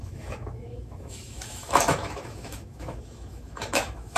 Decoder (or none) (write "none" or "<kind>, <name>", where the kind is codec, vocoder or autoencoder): autoencoder, DAC-VAE